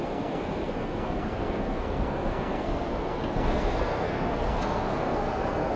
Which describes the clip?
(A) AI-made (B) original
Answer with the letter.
A